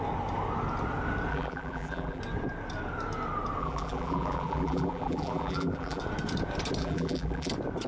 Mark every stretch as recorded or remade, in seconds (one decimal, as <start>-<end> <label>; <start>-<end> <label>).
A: 0.0-1.3 recorded; 1.3-2.2 remade; 2.2-3.6 recorded; 3.6-6.0 remade; 6.0-6.8 recorded; 6.8-7.5 remade; 7.5-7.9 recorded